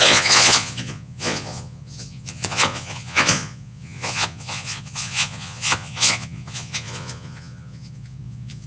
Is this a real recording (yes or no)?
no